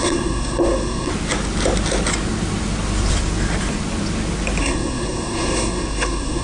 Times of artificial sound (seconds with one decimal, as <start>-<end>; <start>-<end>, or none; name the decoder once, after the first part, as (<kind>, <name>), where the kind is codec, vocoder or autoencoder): 0.0-1.1 (codec, SNAC); 4.6-6.4